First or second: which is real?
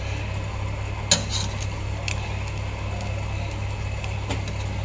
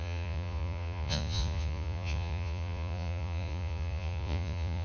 first